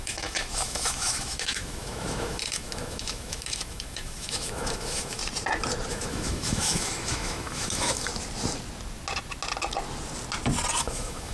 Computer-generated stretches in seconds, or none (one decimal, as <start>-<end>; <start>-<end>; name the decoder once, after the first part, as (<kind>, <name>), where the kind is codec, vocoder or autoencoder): 0.0-5.2 (autoencoder, DAC-VAE); 5.9-8.1; 10.8-11.3